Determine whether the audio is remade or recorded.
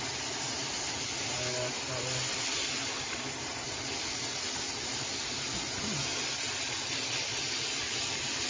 recorded